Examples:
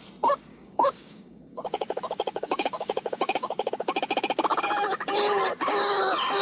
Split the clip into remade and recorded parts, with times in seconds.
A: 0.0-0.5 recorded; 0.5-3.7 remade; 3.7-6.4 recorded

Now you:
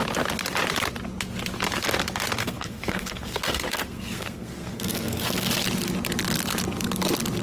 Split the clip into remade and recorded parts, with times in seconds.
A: 0.0-2.4 recorded; 2.4-5.5 remade; 5.5-7.4 recorded

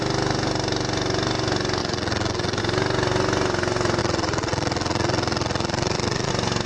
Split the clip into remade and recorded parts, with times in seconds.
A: 0.0-1.8 recorded; 1.8-2.6 remade; 2.6-4.0 recorded; 4.0-6.3 remade; 6.3-6.7 recorded

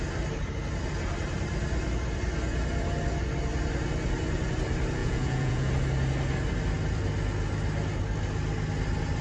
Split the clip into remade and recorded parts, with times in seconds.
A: 0.0-5.0 recorded; 5.0-5.7 remade; 5.7-9.2 recorded

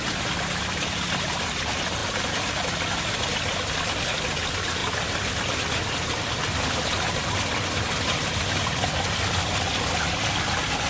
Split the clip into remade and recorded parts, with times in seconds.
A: 0.0-10.9 recorded

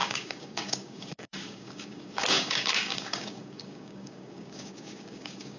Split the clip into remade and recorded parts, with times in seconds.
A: 0.0-5.6 remade

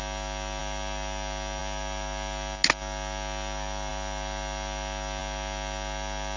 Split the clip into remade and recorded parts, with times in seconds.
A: 0.0-6.4 recorded